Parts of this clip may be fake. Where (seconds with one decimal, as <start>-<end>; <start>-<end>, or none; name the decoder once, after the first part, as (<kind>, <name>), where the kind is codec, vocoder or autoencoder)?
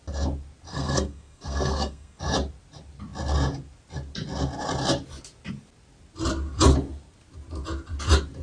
0.7-2.2 (codec, SNAC)